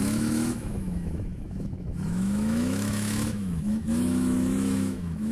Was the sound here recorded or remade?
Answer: remade